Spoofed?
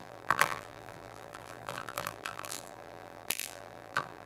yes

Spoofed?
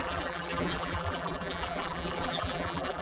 yes